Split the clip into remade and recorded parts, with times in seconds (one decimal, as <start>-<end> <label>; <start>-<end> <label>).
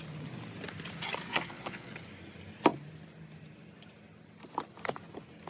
0.0-1.3 recorded; 1.3-1.9 remade; 1.9-5.5 recorded